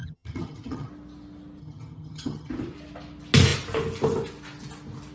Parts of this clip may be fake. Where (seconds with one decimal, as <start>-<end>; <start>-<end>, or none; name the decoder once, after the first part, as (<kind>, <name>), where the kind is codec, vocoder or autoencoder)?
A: 0.0-0.9 (vocoder, HiFi-GAN); 1.6-2.5